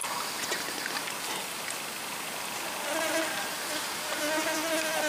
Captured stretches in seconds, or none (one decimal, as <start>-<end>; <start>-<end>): 0.0-5.1